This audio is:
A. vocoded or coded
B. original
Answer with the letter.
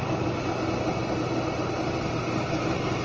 B